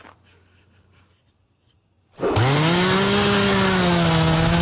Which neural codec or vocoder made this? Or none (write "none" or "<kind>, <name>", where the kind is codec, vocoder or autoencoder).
none